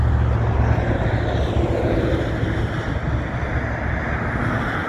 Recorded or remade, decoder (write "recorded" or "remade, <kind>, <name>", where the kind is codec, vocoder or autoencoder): recorded